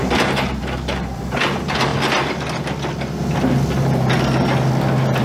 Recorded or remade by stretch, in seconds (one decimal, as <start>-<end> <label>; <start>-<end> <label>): 0.0-1.9 remade; 1.9-5.2 recorded